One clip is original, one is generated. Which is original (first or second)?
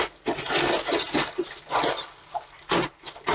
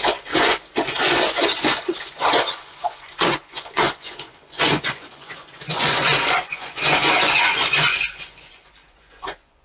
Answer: first